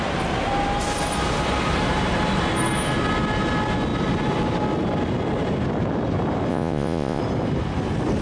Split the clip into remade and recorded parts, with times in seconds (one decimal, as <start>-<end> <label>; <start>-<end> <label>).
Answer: 0.0-6.5 recorded; 6.5-7.2 remade; 7.2-8.2 recorded